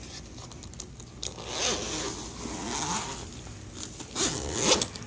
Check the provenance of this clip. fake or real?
real